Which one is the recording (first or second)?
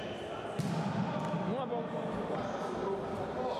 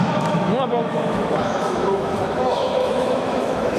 first